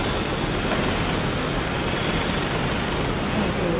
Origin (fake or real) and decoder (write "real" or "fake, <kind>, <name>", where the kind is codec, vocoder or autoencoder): real